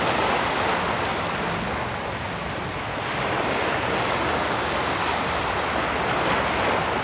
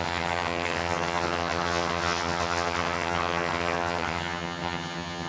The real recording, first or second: first